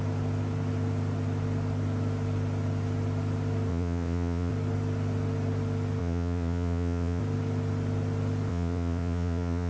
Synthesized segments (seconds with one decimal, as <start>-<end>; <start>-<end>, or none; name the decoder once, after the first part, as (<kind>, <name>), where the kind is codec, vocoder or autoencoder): 3.7-4.5 (vocoder, Vocos); 6.0-7.2; 8.5-9.7